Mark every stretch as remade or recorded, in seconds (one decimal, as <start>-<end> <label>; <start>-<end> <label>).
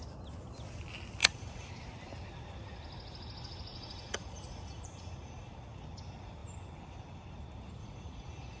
0.0-1.2 recorded; 1.2-1.7 remade; 1.7-3.7 recorded; 3.7-5.5 remade; 5.5-7.8 recorded; 7.8-8.6 remade